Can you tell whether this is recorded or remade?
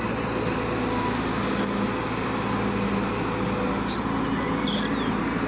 recorded